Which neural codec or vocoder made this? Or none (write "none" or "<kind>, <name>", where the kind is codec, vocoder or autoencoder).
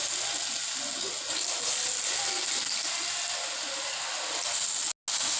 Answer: none